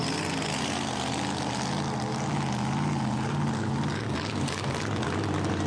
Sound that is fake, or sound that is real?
real